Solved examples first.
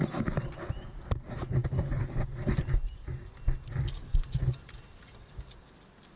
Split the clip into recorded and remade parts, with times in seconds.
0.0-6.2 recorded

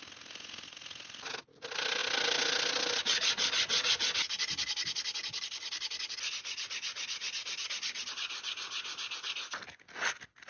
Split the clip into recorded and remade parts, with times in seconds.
0.0-10.5 recorded

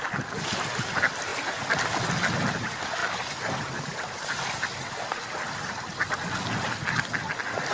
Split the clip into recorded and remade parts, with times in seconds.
0.0-7.7 recorded

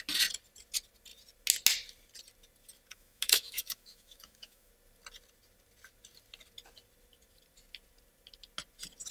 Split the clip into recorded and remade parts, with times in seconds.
0.0-2.9 recorded; 2.9-4.7 remade; 4.7-9.1 recorded